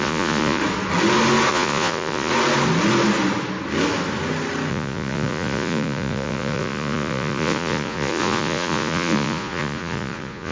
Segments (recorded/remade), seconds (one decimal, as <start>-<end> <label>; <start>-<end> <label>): 0.0-0.6 remade; 0.6-1.5 recorded; 1.5-2.3 remade; 2.3-4.7 recorded; 4.7-10.5 remade